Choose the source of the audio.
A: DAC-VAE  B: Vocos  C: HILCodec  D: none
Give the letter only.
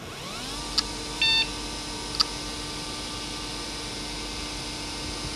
D